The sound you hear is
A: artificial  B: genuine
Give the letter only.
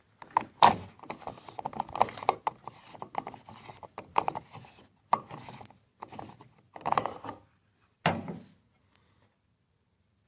B